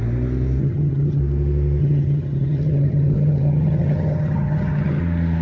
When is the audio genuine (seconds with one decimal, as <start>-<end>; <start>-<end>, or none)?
0.0-0.6; 1.2-1.8; 5.0-5.4

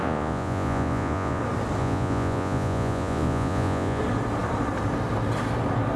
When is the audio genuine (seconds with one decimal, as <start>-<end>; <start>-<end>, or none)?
1.4-1.8; 4.0-6.0

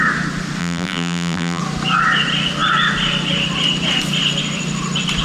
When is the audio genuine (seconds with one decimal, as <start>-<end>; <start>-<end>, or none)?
0.0-0.6; 1.6-5.2

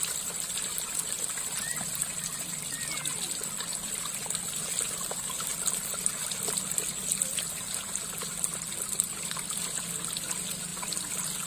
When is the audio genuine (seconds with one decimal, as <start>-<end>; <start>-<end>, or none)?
0.0-11.5

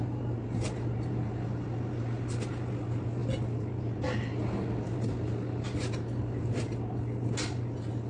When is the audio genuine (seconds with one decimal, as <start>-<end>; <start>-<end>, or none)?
0.0-8.1

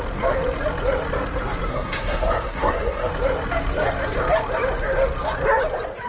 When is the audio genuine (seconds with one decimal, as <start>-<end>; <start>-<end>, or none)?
0.0-1.7; 3.1-6.1

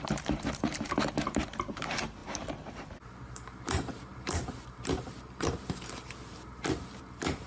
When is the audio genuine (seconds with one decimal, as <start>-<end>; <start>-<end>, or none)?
none